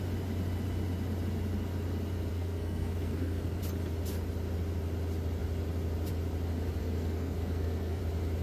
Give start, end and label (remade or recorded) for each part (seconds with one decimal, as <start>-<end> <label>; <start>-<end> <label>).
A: 0.0-2.3 recorded; 2.3-3.6 remade; 3.6-6.8 recorded; 6.8-8.0 remade; 8.0-8.4 recorded